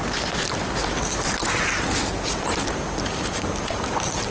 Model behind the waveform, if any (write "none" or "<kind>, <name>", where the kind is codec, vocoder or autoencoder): none